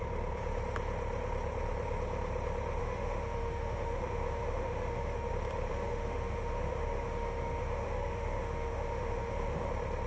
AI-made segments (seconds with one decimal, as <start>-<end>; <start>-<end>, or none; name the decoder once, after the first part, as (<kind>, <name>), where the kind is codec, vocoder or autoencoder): 2.8-5.3 (autoencoder, DAC-VAE); 5.7-9.7